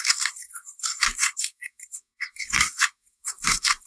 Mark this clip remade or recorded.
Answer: remade